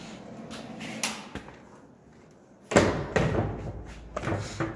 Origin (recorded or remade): recorded